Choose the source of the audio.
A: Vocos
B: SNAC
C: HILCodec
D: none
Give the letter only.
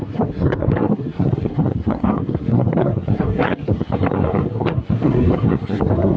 B